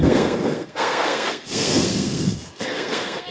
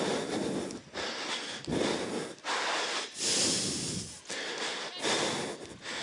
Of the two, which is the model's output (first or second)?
first